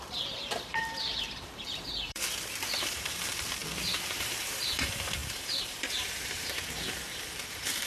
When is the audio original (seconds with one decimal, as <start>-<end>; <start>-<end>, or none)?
3.6-4.1